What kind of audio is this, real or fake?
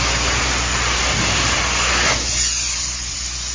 real